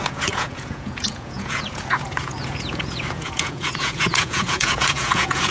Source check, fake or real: fake